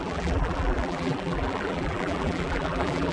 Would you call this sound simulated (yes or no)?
yes